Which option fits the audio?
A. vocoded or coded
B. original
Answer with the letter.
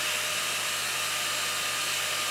B